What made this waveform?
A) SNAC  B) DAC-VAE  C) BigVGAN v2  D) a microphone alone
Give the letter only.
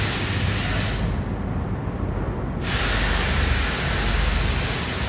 D